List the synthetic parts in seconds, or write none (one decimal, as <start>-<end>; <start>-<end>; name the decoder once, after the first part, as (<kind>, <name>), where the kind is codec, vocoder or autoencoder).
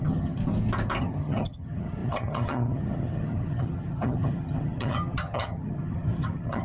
0.0-0.4 (vocoder, HiFi-GAN); 1.0-6.6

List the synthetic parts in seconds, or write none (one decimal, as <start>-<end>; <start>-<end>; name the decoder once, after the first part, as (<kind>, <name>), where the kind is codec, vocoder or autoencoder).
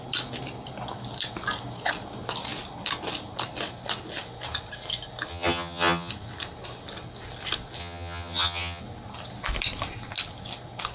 5.3-6.1 (vocoder, HiFi-GAN); 7.8-8.8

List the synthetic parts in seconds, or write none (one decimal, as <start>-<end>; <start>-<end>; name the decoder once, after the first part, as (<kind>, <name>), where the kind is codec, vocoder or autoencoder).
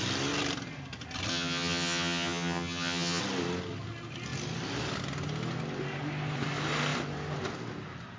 1.3-3.2 (vocoder, HiFi-GAN)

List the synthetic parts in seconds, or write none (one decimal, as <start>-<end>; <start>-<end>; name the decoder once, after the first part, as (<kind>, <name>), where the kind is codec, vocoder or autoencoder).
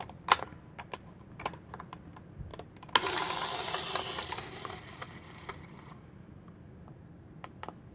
none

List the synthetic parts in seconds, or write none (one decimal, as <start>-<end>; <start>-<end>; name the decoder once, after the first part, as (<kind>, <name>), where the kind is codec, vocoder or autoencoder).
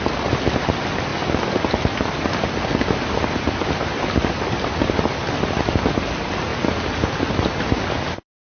none